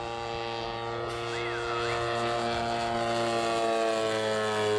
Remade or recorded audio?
recorded